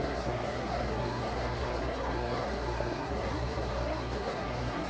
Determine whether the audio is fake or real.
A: fake